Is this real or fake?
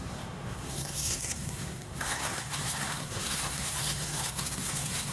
fake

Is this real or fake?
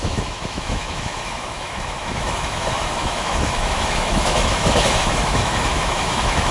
fake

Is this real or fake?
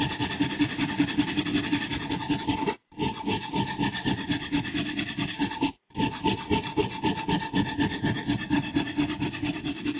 real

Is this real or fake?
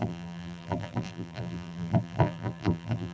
fake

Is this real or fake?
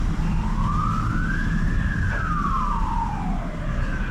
real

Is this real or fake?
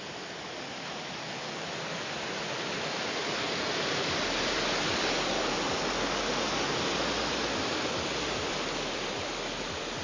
real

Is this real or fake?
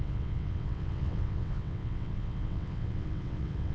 fake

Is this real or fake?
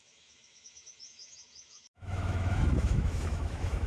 fake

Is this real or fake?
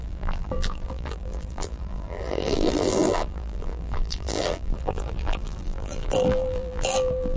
fake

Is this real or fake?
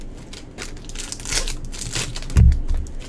real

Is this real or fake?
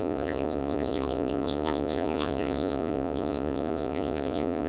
fake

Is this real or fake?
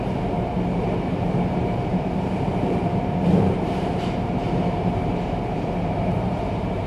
fake